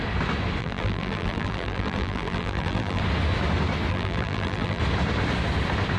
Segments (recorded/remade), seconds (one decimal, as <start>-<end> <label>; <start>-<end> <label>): 0.0-0.6 recorded; 0.6-3.0 remade; 3.0-3.9 recorded; 3.9-4.8 remade; 4.8-6.0 recorded